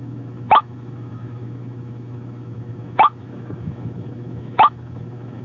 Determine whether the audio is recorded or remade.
remade